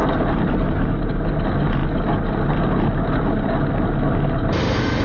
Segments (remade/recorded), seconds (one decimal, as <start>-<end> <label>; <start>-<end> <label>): 0.0-1.3 remade; 1.3-5.0 recorded